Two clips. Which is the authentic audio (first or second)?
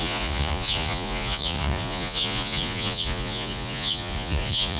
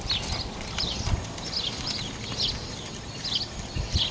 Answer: second